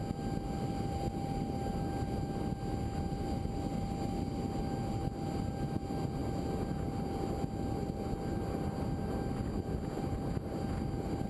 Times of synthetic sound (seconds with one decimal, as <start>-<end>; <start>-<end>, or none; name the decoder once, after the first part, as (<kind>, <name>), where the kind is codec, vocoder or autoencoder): none